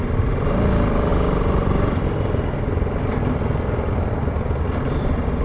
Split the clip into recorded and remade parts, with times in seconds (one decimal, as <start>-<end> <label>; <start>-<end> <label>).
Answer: 0.0-5.4 recorded